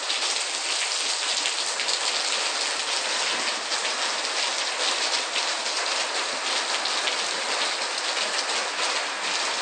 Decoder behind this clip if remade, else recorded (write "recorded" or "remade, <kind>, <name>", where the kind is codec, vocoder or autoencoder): recorded